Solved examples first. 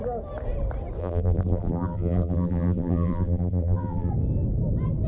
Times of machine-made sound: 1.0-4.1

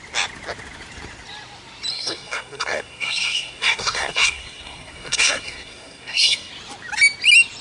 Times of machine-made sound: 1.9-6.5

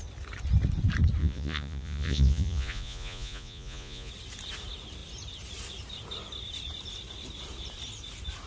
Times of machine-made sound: 1.2-4.1

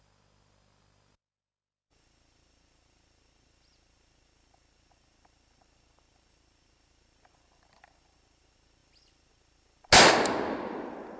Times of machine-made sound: none

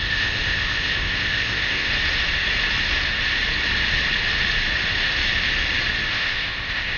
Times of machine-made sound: 0.0-1.9; 6.1-7.0

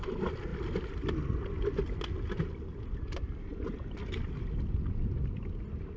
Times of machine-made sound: none

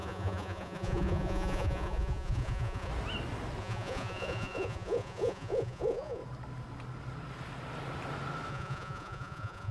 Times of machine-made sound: 0.0-2.9; 3.6-6.2; 8.5-9.7

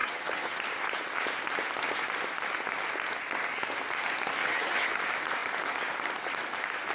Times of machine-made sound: 0.0-0.6; 4.4-5.0